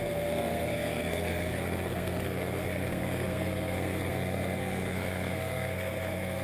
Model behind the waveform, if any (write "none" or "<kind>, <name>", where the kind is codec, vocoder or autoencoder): codec, SNAC